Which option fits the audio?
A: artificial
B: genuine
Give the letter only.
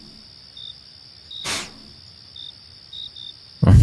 B